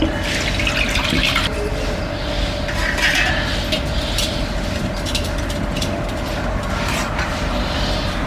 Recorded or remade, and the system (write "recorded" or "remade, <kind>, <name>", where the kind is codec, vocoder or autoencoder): recorded